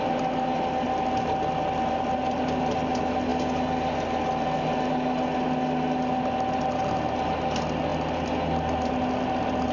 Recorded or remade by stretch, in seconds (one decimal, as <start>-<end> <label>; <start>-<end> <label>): 0.0-9.7 recorded